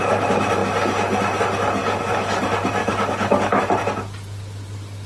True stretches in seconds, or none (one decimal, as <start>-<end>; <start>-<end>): 0.0-1.8; 2.4-2.8; 3.6-5.1